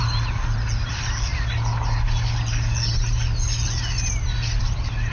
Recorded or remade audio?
recorded